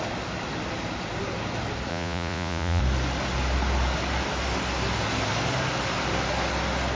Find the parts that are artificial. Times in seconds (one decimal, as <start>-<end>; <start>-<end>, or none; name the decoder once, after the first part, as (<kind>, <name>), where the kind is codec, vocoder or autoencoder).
1.9-2.8 (vocoder, Vocos)